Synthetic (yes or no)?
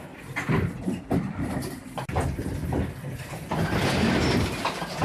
yes